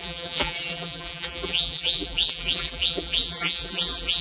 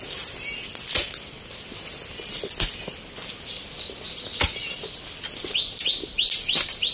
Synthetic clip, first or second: first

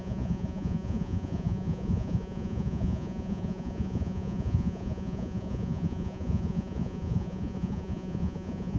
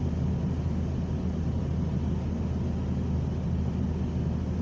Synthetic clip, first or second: first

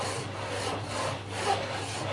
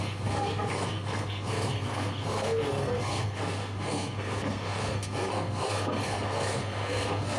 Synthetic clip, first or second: second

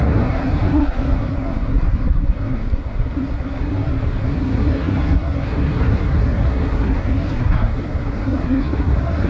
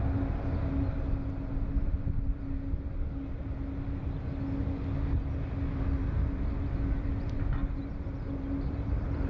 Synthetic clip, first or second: first